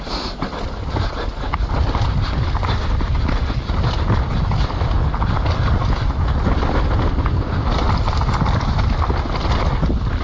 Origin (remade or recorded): recorded